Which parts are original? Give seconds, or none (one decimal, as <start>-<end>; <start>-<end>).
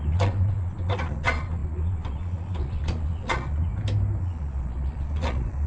3.7-4.2